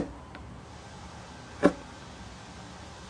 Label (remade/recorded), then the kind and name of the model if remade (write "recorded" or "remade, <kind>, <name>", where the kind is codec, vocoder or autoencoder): recorded